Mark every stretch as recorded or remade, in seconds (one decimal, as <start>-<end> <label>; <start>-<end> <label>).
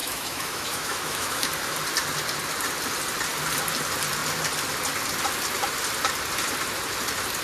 0.0-1.5 remade; 1.5-7.4 recorded